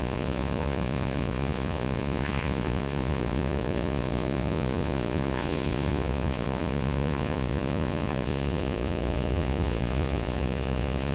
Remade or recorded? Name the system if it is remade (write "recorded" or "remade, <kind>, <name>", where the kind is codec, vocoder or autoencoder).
remade, vocoder, Vocos